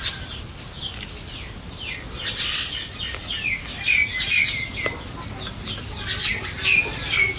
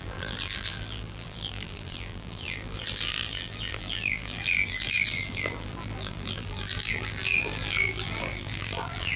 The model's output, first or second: second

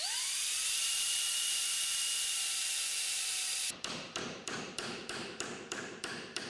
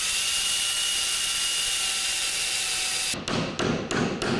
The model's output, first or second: first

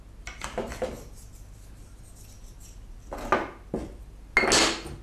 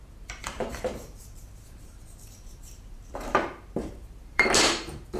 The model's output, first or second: second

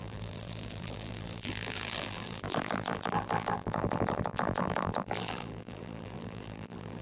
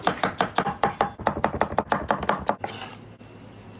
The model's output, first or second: first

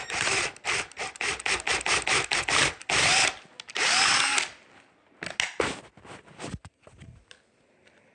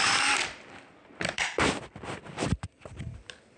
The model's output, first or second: second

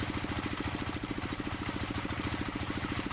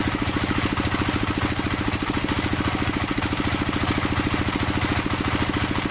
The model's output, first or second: first